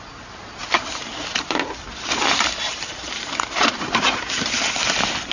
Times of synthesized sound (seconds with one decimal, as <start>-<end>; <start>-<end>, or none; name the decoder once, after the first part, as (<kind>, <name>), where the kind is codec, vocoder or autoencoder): 0.6-1.7 (vocoder, BigVGAN v2); 2.7-4.8